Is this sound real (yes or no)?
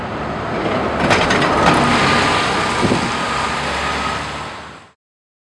yes